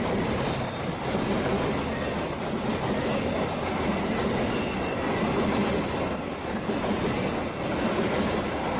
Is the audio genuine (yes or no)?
yes